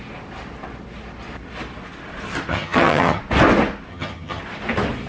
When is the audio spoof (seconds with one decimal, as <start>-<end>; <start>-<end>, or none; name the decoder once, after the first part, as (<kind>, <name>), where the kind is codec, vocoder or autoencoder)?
2.5-3.2 (vocoder, HiFi-GAN); 3.9-4.4